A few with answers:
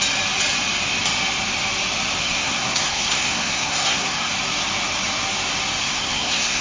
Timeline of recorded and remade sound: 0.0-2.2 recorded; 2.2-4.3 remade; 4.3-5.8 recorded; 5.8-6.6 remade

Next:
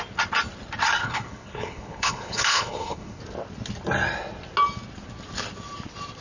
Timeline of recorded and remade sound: 0.0-1.0 recorded; 1.0-3.2 remade; 3.2-6.2 recorded

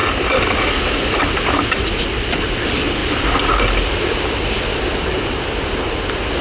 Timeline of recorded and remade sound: 0.0-6.4 recorded

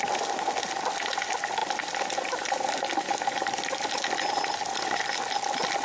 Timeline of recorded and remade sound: 0.0-1.6 recorded; 1.6-4.3 remade; 4.3-5.8 recorded

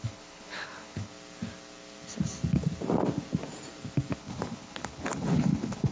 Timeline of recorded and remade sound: 0.0-1.1 remade; 1.1-4.2 recorded; 4.2-5.9 remade

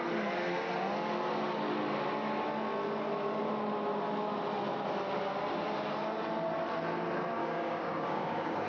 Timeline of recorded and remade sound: 0.0-7.4 recorded; 7.4-8.7 remade